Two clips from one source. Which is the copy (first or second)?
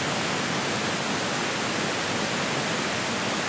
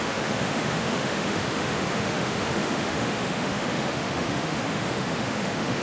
second